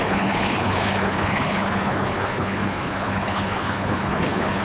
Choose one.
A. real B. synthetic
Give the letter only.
B